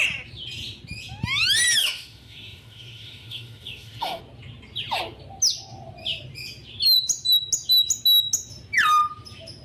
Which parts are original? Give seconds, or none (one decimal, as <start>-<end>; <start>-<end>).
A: 0.0-1.8; 4.2-9.6